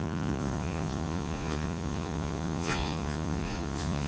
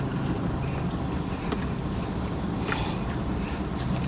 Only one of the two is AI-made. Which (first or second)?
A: first